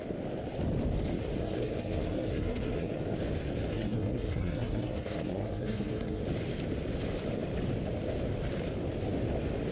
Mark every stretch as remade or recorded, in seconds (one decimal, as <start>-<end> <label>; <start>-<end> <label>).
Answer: 0.0-1.4 recorded; 1.4-3.0 remade; 3.0-3.7 recorded; 3.7-6.2 remade; 6.2-9.7 recorded